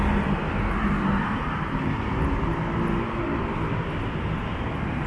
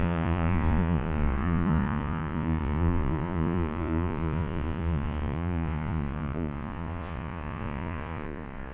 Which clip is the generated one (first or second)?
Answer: second